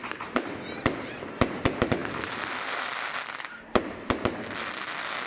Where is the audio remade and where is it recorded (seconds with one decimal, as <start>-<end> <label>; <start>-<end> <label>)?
0.0-5.3 recorded